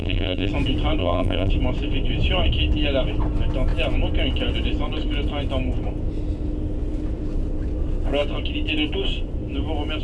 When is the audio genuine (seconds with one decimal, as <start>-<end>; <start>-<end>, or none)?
0.5-1.0; 1.5-10.0